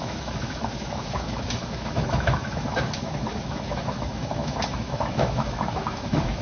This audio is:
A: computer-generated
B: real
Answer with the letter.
A